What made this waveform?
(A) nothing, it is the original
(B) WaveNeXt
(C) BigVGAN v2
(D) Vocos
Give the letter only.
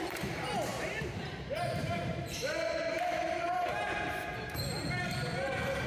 C